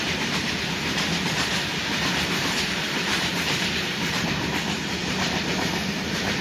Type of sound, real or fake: fake